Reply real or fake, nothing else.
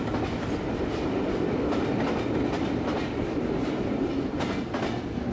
real